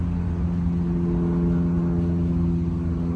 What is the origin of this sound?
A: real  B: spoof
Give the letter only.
A